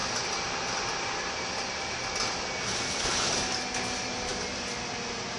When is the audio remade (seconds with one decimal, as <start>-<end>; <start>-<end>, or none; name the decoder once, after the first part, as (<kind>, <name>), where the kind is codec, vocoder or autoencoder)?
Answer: none